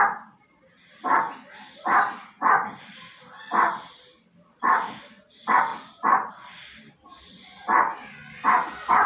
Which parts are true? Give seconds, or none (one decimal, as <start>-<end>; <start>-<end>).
0.0-9.1